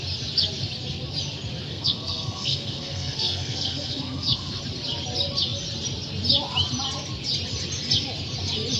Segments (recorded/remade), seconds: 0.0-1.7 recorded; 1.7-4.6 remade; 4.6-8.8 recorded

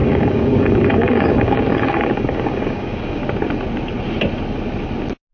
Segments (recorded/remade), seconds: 0.0-3.2 remade; 3.2-5.3 recorded

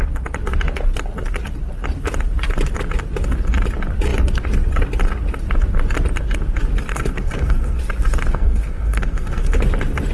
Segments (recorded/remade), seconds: 0.0-6.9 recorded; 6.9-7.8 remade; 7.8-8.3 recorded; 8.3-9.6 remade; 9.6-10.1 recorded

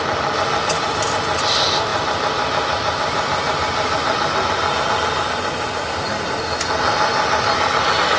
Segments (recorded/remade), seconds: 0.0-8.2 recorded

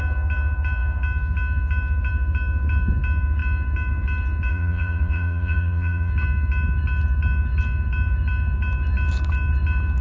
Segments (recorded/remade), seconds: 0.0-4.5 recorded; 4.5-6.1 remade; 6.1-10.0 recorded